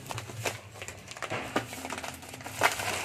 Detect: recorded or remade recorded